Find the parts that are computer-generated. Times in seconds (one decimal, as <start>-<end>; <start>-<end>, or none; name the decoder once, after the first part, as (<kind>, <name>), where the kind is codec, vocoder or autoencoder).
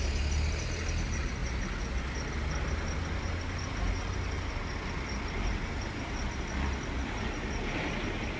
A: none